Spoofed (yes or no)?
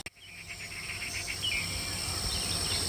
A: no